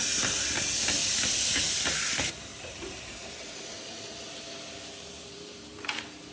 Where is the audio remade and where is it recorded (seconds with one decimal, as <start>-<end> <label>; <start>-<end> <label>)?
0.0-2.5 recorded; 2.5-6.3 remade